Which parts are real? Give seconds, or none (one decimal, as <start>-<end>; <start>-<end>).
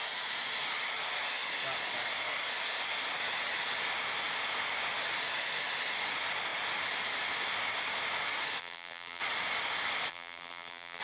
0.0-8.6; 9.2-10.1